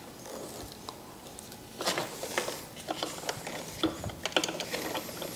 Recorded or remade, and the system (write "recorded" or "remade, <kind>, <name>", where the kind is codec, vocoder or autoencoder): recorded